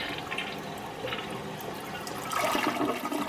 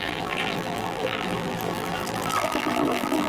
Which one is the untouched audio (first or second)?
first